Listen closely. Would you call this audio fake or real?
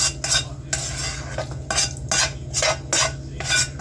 real